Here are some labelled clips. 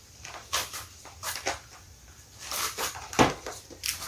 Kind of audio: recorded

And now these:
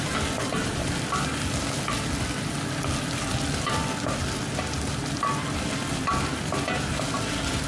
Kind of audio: recorded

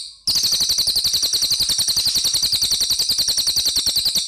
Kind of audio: recorded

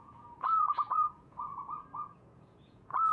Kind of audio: remade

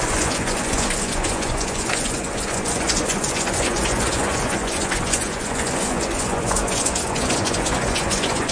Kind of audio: remade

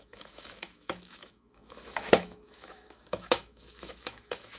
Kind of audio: remade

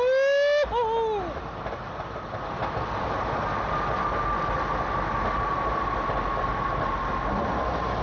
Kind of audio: recorded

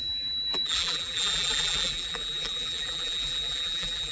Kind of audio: remade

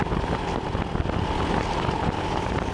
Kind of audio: recorded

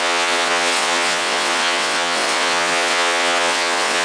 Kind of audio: remade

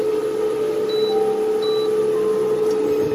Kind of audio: recorded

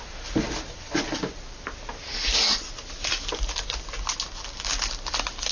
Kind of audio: recorded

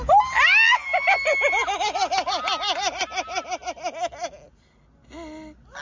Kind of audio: recorded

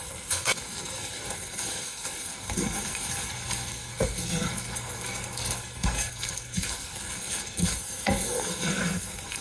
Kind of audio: remade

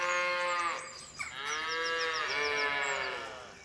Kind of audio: recorded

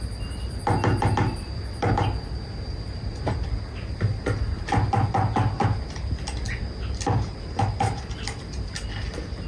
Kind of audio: recorded